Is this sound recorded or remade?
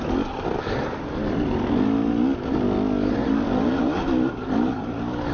recorded